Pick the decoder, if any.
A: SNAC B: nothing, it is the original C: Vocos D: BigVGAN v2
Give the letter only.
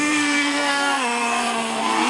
A